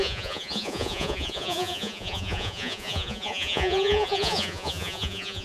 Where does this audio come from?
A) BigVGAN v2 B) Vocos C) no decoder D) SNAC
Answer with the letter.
B